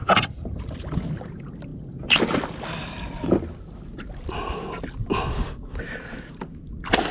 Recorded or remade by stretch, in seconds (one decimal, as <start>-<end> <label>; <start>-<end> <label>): 0.0-7.1 recorded